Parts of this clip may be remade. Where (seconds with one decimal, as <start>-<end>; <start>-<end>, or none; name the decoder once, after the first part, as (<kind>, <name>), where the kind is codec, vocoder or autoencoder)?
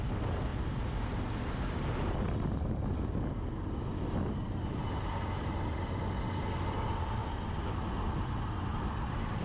8.7-9.4 (vocoder, BigVGAN v2)